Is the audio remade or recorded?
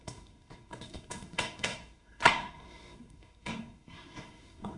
remade